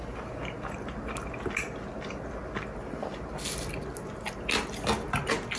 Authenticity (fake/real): real